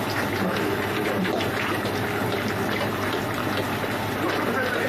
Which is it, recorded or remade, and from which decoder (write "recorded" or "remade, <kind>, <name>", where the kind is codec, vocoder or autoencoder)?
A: recorded